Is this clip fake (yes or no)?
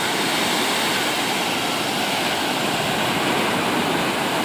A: no